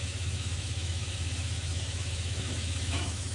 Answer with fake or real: fake